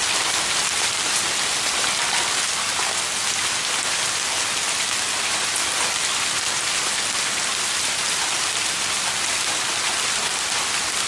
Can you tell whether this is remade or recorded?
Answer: recorded